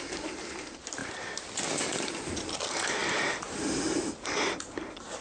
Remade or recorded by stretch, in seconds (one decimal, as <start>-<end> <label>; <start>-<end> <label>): 0.0-5.2 recorded